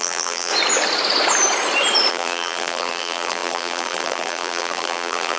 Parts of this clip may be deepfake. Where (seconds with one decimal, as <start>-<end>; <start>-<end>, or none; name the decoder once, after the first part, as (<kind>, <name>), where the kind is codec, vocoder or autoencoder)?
0.0-0.5 (vocoder, BigVGAN v2); 2.1-5.4